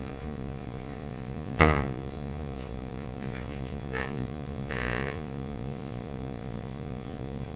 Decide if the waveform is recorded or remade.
remade